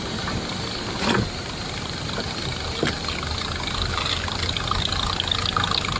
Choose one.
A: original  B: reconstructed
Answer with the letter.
A